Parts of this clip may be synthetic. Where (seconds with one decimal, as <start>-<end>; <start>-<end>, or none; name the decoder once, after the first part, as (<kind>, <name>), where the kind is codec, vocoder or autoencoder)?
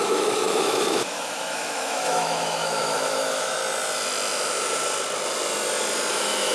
0.0-3.6 (autoencoder, DAC-VAE); 6.1-6.5